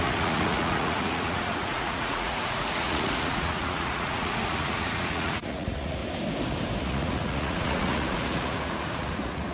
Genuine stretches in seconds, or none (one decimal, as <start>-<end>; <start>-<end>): 6.0-6.8